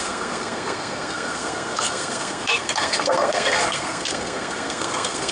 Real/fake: fake